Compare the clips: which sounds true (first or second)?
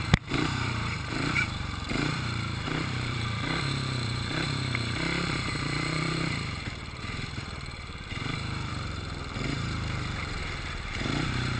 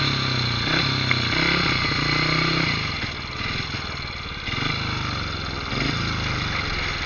second